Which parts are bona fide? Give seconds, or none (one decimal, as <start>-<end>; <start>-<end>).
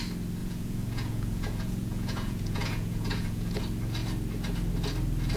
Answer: 0.0-0.4; 3.6-5.4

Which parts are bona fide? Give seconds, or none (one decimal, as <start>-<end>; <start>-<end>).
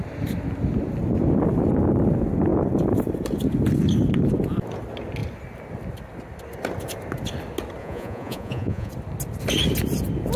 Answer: 0.0-7.8; 8.9-10.4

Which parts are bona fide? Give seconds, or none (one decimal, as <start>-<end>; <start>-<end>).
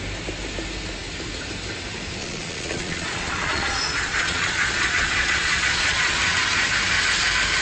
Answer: 0.0-2.2; 6.2-7.6